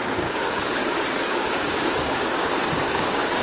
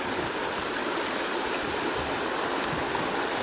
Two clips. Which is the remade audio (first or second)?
first